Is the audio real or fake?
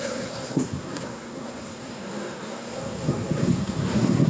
fake